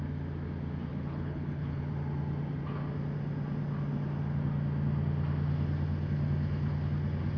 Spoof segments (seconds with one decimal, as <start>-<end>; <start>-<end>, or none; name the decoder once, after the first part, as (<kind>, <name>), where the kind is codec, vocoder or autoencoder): 0.9-1.9 (codec, HILCodec)